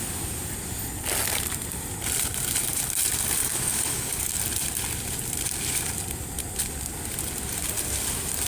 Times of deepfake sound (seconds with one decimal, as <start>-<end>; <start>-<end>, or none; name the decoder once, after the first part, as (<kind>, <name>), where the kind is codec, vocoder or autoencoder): 3.4-4.4 (codec, DAC)